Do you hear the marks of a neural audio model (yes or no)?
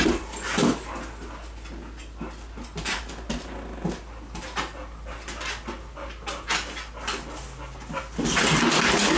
no